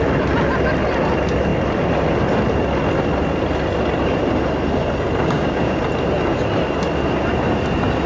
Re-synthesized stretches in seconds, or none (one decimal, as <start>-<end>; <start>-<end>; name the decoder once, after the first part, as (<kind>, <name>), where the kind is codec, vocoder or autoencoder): 5.2-5.8 (codec, DAC)